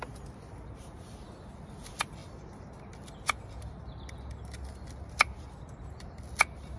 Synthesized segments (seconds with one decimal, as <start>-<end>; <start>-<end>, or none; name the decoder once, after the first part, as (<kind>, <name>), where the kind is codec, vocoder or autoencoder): none